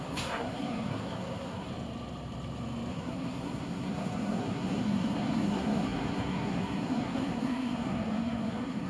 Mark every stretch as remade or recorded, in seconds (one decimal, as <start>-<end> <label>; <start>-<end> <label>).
0.0-1.7 remade; 1.7-2.9 recorded; 2.9-8.9 remade